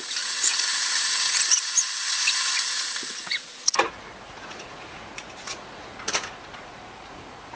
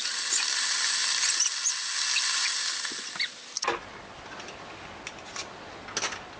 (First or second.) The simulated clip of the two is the first